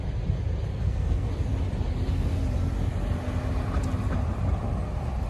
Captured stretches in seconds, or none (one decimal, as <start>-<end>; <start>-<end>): 0.0-0.7; 1.3-5.3

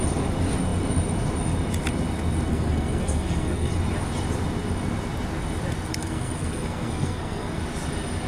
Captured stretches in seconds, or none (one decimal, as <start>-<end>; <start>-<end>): 0.0-2.5; 3.7-5.9; 7.6-8.3

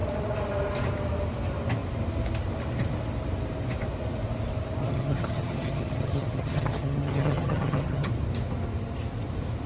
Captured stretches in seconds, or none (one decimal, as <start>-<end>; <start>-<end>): 0.0-4.8; 8.1-9.7